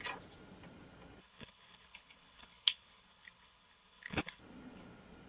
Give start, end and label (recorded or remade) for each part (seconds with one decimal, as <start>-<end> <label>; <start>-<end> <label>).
0.0-1.2 recorded; 1.2-4.4 remade; 4.4-5.3 recorded